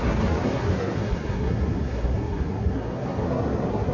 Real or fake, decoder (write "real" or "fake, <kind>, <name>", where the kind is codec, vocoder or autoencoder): fake, codec, SNAC